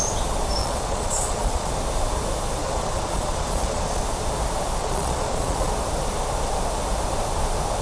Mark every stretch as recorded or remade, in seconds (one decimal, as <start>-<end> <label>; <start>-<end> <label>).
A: 0.0-0.6 recorded; 0.6-1.7 remade; 1.7-2.6 recorded; 2.6-4.0 remade; 4.0-4.8 recorded; 4.8-5.7 remade; 5.7-7.8 recorded